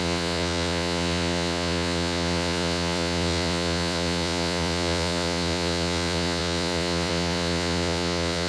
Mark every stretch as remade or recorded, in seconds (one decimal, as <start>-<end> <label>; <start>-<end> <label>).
0.0-8.5 remade